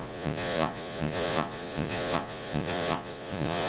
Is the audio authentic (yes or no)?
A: no